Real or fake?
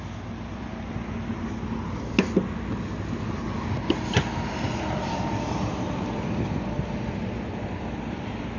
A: real